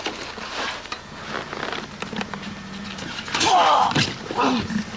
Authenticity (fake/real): real